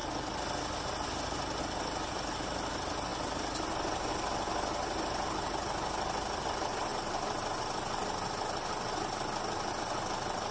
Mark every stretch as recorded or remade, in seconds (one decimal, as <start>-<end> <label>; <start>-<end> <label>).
0.0-10.5 recorded